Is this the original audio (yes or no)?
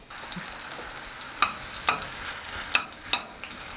yes